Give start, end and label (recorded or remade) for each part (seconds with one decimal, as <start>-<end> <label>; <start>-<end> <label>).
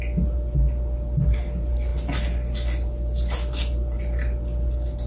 0.0-5.1 recorded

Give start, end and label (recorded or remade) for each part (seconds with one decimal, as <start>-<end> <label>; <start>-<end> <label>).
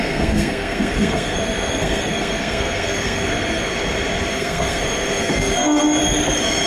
0.0-3.7 remade; 3.7-4.3 recorded; 4.3-6.0 remade; 6.0-6.7 recorded